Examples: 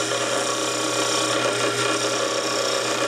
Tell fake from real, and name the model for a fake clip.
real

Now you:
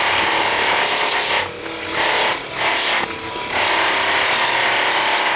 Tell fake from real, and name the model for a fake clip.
real